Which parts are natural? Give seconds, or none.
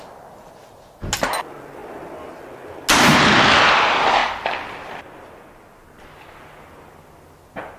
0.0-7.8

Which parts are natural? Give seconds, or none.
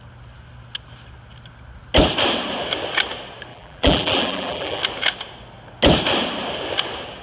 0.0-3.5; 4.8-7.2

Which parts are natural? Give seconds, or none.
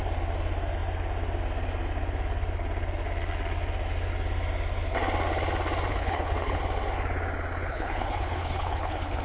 0.0-5.9; 6.6-7.7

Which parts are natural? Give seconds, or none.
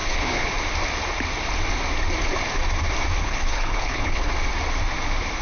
0.5-3.2; 4.3-5.4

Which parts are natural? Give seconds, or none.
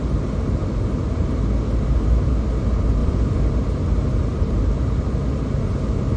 0.0-3.0; 3.5-4.3; 5.2-6.2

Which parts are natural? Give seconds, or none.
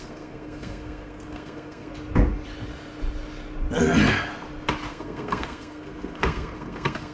1.9-4.9